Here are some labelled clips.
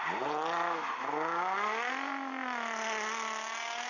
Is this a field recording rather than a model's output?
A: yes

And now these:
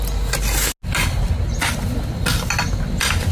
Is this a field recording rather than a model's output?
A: yes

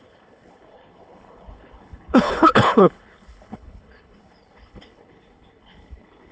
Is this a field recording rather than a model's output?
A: no